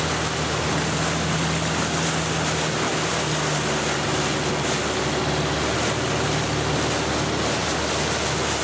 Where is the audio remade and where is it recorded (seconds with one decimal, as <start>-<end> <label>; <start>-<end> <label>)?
0.0-8.6 recorded